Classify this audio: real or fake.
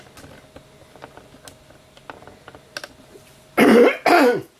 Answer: real